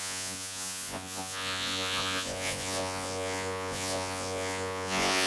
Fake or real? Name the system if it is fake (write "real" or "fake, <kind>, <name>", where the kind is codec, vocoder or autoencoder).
fake, vocoder, Vocos